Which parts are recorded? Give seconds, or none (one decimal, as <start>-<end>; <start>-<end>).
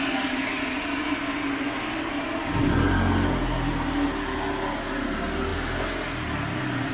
0.0-6.9